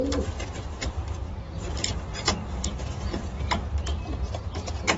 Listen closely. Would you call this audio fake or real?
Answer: fake